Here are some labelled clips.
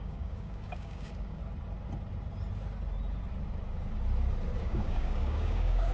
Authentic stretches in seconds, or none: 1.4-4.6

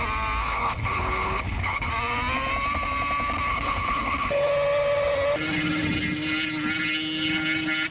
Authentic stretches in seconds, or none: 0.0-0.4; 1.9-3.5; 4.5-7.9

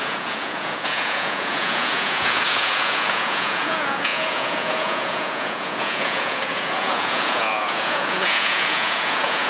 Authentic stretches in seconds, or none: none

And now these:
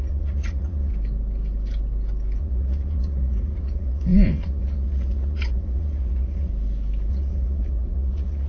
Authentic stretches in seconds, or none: 0.9-2.4; 6.5-7.1

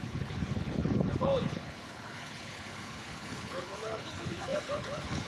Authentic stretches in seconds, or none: none